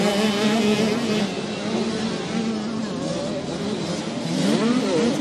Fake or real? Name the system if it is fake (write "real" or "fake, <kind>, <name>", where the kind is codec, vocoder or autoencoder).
real